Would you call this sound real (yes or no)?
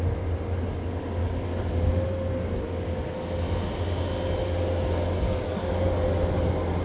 yes